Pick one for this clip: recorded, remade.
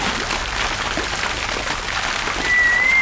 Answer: recorded